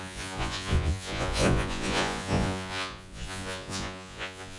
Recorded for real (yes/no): no